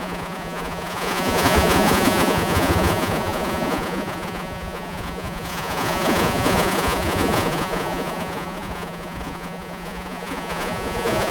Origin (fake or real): fake